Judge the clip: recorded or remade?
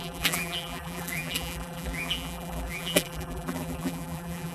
remade